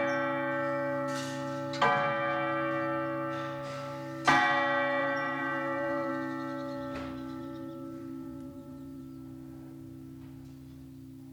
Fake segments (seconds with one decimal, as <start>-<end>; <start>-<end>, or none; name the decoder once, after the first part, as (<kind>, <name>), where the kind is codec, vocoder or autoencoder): 5.0-6.1 (vocoder, BigVGAN v2); 7.4-9.0